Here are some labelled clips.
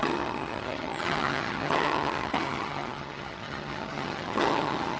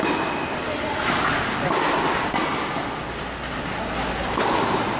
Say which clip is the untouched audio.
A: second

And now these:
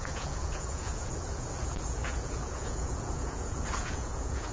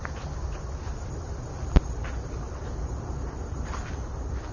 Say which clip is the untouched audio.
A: second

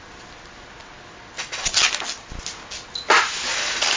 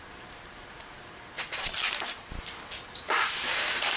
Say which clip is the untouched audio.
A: first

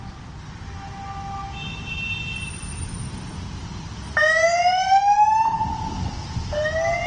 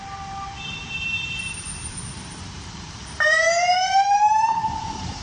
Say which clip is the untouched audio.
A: first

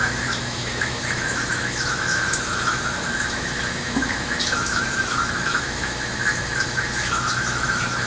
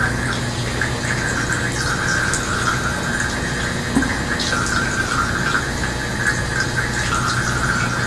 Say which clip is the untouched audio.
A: second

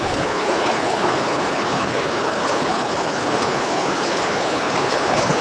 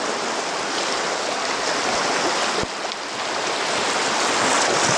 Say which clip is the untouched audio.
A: second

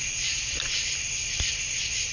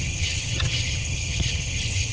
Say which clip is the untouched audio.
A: first